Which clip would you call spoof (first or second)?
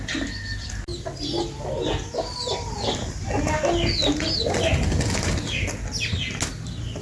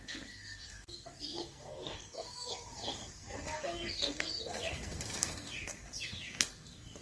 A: second